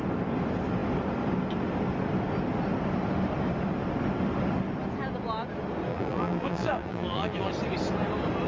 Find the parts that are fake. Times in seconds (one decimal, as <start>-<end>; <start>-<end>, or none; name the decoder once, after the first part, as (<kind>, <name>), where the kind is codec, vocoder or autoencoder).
5.9-7.5 (vocoder, BigVGAN v2)